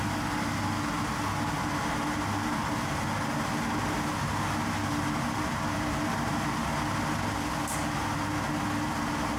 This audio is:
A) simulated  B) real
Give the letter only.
B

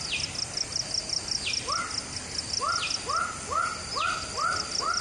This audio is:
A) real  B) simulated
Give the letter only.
A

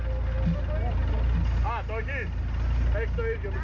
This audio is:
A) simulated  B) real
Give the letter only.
B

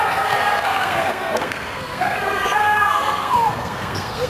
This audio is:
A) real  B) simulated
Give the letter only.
B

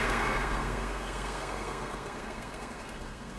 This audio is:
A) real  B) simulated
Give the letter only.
B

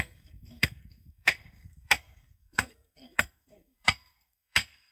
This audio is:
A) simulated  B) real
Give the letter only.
A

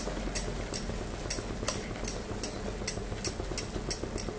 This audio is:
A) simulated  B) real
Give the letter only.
B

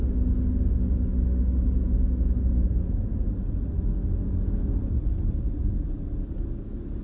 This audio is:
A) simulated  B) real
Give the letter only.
B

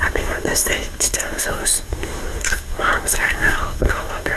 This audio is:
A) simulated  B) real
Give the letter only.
A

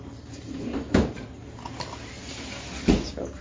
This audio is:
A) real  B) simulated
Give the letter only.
A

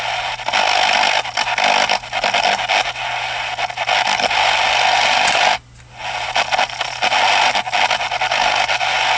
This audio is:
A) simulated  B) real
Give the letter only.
B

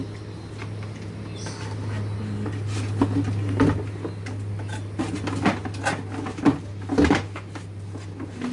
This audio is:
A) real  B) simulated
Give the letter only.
A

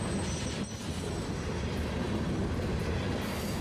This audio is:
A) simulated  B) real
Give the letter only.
B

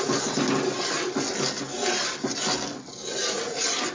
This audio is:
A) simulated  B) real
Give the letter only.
B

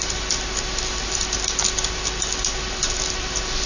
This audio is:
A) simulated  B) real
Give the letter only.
B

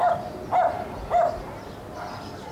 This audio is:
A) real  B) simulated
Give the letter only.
A